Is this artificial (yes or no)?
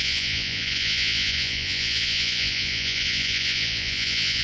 yes